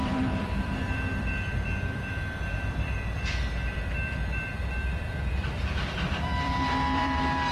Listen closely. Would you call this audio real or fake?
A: fake